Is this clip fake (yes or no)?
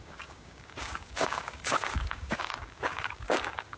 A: yes